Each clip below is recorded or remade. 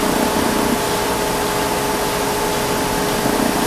recorded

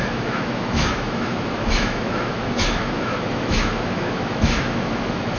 remade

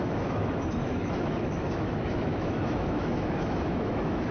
remade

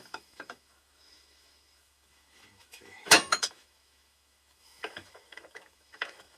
remade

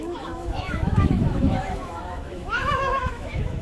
remade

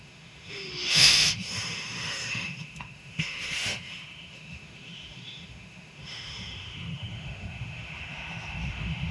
remade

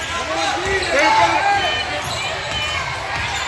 recorded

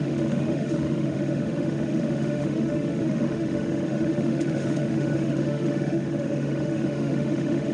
remade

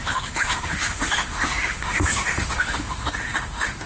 remade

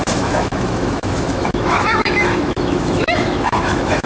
remade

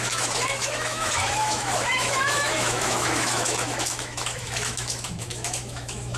remade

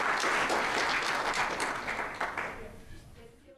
recorded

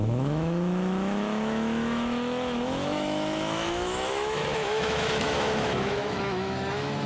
remade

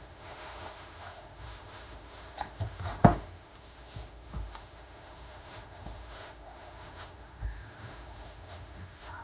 remade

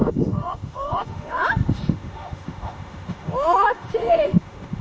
remade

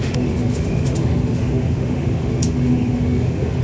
remade